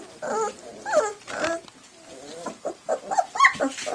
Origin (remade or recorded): recorded